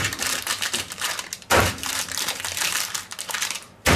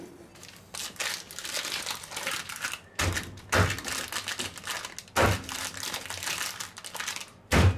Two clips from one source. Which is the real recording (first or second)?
second